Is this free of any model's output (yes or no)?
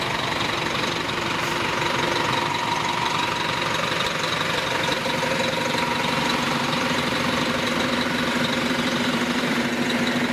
no